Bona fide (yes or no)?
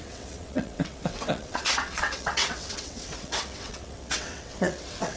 no